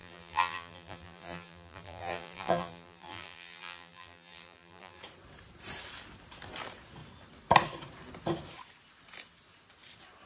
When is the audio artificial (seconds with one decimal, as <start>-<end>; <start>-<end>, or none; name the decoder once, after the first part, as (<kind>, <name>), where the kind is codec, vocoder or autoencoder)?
0.0-5.0 (vocoder, BigVGAN v2)